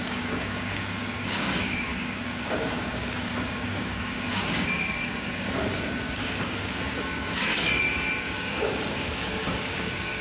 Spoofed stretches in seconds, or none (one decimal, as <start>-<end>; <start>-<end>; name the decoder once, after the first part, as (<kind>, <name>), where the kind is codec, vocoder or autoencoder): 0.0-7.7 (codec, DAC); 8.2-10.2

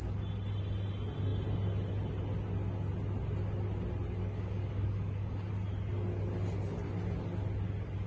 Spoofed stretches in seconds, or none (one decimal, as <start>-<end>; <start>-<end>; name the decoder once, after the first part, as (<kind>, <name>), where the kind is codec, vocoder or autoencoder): 4.2-5.5 (codec, DAC)

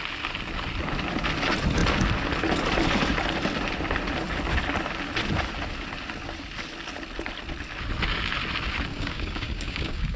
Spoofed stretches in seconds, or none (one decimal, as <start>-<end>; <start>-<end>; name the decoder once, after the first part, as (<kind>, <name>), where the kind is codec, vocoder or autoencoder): 8.9-10.2 (codec, DAC)

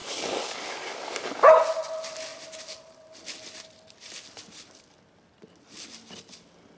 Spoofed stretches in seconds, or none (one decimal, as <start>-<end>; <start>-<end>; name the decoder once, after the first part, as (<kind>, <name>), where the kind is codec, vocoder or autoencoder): 0.0-1.5 (codec, DAC)